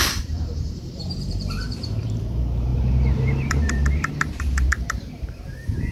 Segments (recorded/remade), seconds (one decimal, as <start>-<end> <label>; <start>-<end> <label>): 0.0-5.9 remade